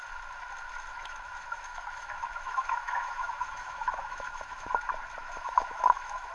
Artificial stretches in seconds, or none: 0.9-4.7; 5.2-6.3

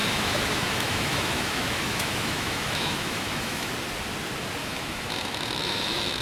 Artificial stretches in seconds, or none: 0.0-3.7; 4.6-6.2

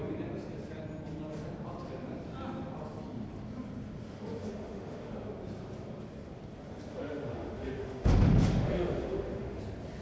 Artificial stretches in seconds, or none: 4.4-5.1; 6.9-9.6

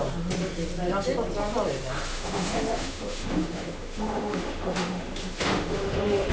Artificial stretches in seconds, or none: 2.1-6.3

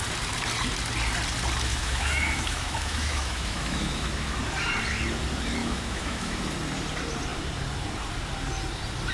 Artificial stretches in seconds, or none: 1.7-4.4; 5.6-6.4

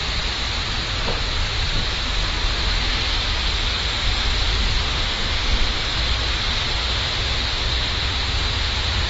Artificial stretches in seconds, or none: 4.8-5.9; 6.8-9.1